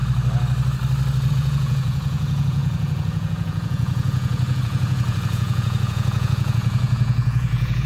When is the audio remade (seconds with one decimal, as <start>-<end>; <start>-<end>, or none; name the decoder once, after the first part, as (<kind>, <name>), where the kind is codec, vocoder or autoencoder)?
1.3-7.9 (vocoder, Vocos)